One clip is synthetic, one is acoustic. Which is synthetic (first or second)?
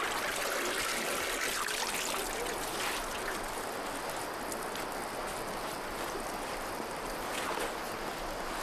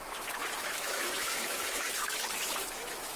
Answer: second